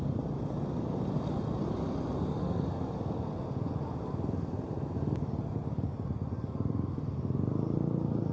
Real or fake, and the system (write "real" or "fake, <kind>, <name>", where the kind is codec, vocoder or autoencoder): real